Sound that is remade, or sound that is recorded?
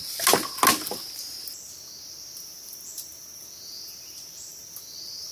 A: recorded